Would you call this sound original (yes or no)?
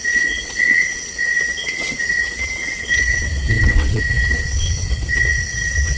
no